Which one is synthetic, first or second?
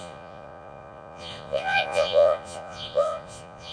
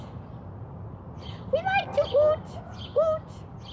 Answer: first